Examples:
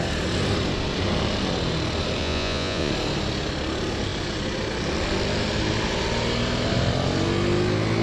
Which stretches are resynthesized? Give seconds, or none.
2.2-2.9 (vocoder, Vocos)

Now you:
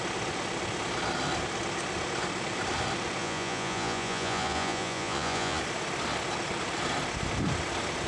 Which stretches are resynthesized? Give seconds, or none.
3.2-5.6 (vocoder, Vocos)

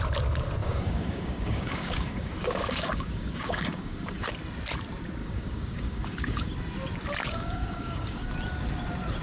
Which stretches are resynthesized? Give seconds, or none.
0.6-4.3 (codec, DAC); 5.2-6.5; 7.2-8.3

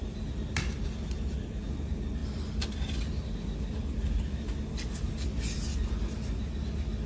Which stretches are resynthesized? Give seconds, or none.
none

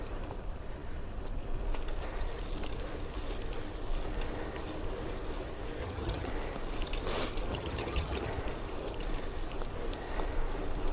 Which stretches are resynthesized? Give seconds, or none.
5.8-6.3 (vocoder, HiFi-GAN); 7.5-8.3

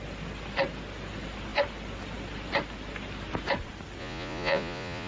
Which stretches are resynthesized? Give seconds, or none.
4.0-5.1 (vocoder, Vocos)

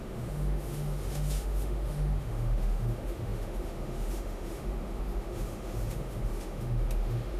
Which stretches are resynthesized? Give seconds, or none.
0.0-7.4 (autoencoder, DAC-VAE)

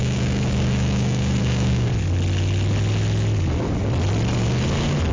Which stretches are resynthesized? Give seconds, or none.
0.0-1.9 (codec, DAC)